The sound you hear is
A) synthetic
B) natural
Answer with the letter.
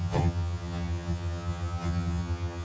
A